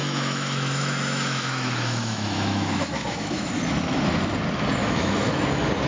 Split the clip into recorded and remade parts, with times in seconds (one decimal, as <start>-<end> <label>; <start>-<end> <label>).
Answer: 0.0-3.5 remade; 3.5-4.8 recorded; 4.8-5.4 remade; 5.4-5.9 recorded